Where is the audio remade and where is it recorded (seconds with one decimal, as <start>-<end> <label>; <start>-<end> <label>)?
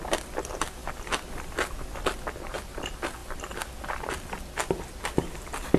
0.0-5.8 recorded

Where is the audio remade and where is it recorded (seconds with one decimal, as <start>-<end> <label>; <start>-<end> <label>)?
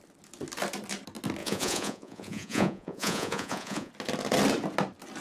0.0-1.4 recorded; 1.4-3.9 remade; 3.9-5.2 recorded